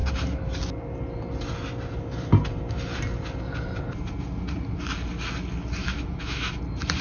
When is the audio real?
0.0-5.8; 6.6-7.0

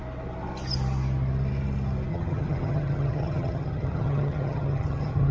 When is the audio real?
0.0-2.1